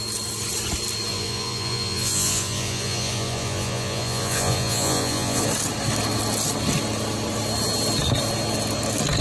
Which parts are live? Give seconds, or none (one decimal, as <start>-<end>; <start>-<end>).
0.0-1.1; 5.4-9.2